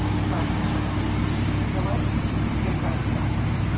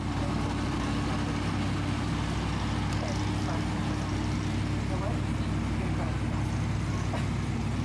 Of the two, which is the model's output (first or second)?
first